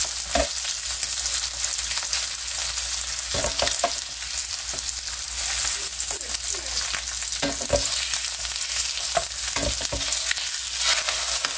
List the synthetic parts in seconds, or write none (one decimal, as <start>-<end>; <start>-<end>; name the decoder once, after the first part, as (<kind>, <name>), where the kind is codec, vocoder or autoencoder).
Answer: none